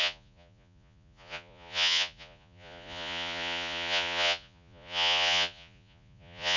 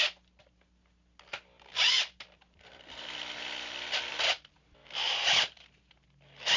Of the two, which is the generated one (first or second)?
first